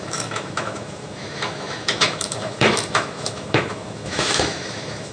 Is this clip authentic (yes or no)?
no